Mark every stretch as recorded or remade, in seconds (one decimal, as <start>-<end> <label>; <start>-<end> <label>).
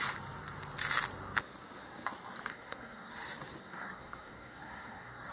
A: 0.0-2.5 recorded; 2.5-3.1 remade; 3.1-3.6 recorded; 3.6-5.3 remade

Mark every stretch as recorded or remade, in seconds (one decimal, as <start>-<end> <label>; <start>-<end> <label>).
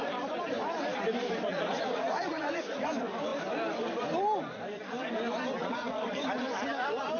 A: 0.0-1.5 recorded; 1.5-2.9 remade; 2.9-5.6 recorded; 5.6-6.3 remade; 6.3-7.2 recorded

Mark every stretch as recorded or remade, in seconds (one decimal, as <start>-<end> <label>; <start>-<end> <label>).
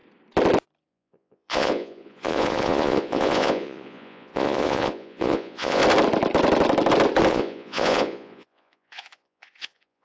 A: 0.0-0.9 recorded; 0.9-5.8 remade; 5.8-7.3 recorded; 7.3-10.0 remade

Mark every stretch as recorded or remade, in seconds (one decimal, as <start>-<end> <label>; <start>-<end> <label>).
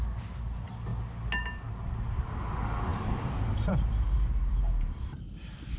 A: 0.0-2.9 recorded; 2.9-5.8 remade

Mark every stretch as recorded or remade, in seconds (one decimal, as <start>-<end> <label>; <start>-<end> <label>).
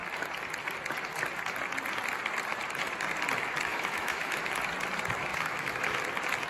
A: 0.0-3.7 recorded; 3.7-4.4 remade; 4.4-5.3 recorded; 5.3-6.0 remade; 6.0-6.5 recorded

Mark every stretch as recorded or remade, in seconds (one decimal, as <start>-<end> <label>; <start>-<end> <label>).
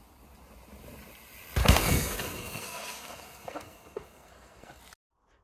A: 0.0-1.6 recorded; 1.6-4.8 remade; 4.8-5.4 recorded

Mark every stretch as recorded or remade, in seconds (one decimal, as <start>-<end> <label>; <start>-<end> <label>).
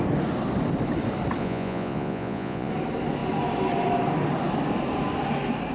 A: 0.0-1.4 recorded; 1.4-2.7 remade; 2.7-5.7 recorded